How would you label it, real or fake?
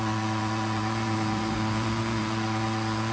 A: fake